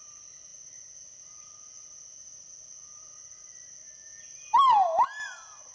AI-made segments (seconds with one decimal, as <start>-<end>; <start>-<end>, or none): none